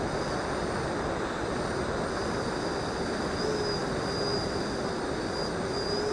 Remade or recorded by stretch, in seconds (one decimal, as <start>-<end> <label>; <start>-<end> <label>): 0.0-6.1 recorded